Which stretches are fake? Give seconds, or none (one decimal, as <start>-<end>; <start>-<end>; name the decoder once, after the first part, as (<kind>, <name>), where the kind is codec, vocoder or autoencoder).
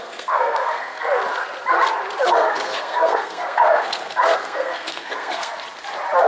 0.0-1.2 (codec, SNAC); 2.3-5.5